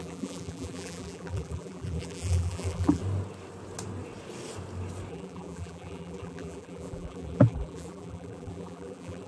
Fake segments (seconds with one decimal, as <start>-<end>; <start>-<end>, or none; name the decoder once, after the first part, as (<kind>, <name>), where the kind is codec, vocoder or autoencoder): 0.0-3.0 (vocoder, BigVGAN v2); 5.1-9.3